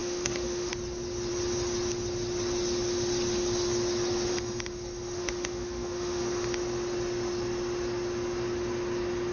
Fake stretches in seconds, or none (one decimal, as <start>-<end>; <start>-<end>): 0.0-0.7; 5.2-6.2